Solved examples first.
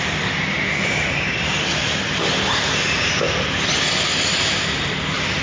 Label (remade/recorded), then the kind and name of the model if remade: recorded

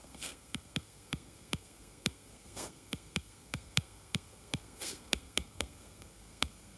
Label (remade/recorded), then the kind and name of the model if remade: remade, codec, SNAC